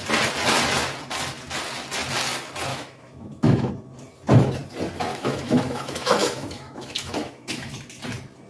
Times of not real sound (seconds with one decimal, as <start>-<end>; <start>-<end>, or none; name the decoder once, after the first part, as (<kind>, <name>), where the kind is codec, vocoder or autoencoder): 2.7-3.7 (autoencoder, DAC-VAE); 5.1-7.7